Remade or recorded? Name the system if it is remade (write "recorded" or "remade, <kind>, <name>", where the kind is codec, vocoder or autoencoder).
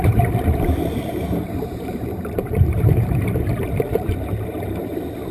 remade, vocoder, BigVGAN v2